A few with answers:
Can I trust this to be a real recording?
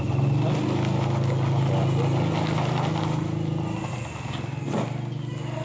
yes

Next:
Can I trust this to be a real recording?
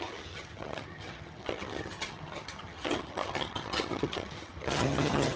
no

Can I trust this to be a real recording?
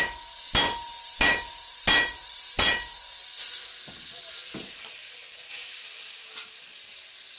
yes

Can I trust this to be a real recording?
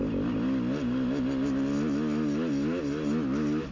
yes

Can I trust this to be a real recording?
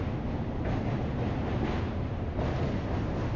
yes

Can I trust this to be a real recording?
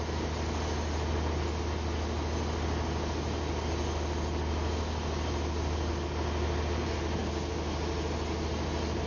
yes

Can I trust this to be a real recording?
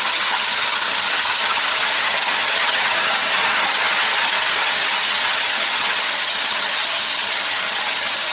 no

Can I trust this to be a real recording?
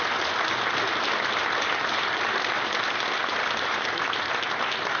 yes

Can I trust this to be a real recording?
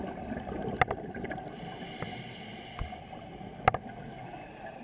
yes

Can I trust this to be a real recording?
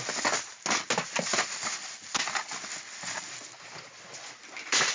yes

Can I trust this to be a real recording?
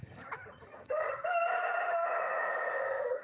yes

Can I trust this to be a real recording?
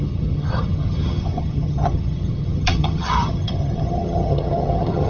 no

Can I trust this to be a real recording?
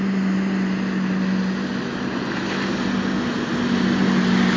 yes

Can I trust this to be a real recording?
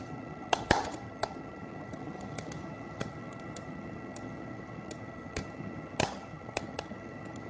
no